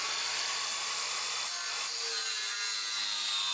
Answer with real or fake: real